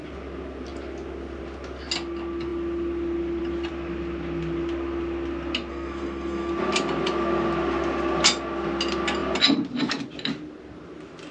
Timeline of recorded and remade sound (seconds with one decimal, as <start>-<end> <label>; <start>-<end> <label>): 0.0-5.7 recorded; 5.7-6.5 remade; 6.5-11.3 recorded